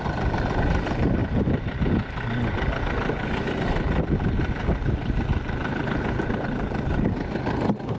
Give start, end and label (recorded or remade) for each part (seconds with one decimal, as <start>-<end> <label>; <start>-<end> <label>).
0.0-8.0 recorded